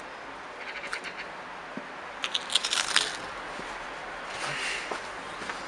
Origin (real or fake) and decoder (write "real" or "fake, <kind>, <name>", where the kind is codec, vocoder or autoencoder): real